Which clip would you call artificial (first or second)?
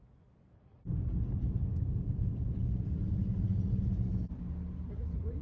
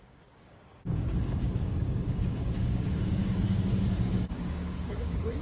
second